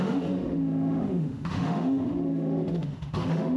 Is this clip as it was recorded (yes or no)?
no